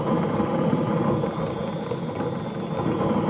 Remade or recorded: recorded